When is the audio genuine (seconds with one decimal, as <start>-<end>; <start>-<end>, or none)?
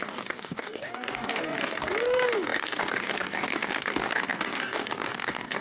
none